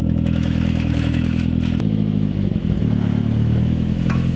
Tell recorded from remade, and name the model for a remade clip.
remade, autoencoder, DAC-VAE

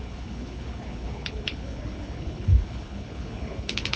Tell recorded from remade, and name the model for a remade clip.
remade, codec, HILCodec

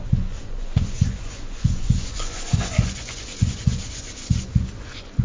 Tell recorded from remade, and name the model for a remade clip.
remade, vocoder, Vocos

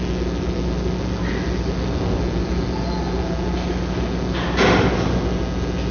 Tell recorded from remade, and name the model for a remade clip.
recorded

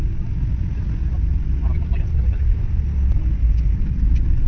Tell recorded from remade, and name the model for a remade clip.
recorded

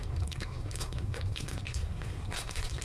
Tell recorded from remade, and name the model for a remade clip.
remade, codec, SNAC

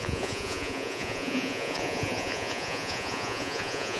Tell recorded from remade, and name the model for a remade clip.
remade, vocoder, Vocos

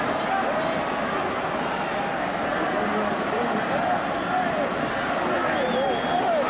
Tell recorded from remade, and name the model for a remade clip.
recorded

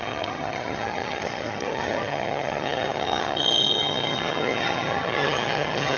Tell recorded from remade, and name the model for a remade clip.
remade, vocoder, HiFi-GAN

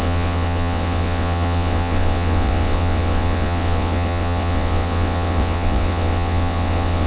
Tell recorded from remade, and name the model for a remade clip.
remade, vocoder, WaveNeXt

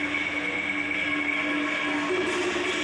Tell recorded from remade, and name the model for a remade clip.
recorded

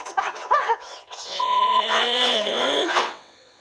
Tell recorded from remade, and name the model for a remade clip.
remade, vocoder, WaveNeXt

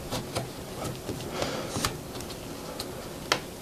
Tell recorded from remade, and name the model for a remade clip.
recorded